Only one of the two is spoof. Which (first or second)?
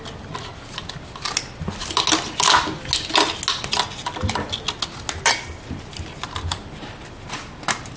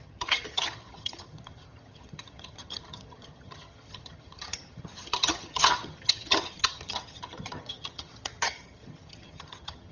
second